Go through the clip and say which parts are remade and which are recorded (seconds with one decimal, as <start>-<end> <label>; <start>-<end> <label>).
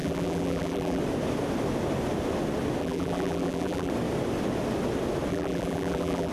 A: 0.0-1.0 remade; 1.0-2.8 recorded; 2.8-3.9 remade; 3.9-5.3 recorded; 5.3-6.3 remade